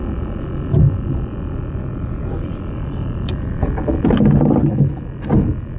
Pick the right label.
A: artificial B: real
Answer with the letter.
B